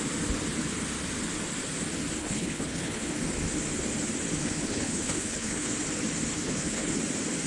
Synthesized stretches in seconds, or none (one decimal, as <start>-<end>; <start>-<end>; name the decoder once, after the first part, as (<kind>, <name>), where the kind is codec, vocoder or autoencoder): 2.2-3.1 (codec, HILCodec); 4.4-5.7; 6.3-7.0